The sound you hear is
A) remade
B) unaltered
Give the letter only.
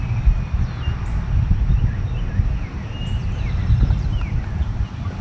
A